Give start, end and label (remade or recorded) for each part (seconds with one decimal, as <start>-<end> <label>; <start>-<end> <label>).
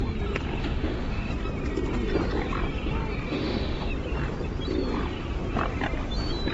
0.0-0.6 recorded; 0.6-1.3 remade; 1.3-3.3 recorded; 3.3-3.9 remade; 3.9-6.5 recorded